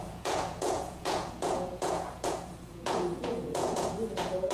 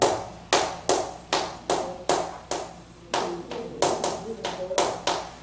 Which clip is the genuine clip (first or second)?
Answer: second